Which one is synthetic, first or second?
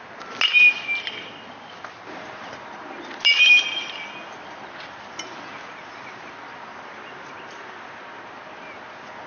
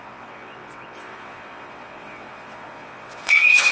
second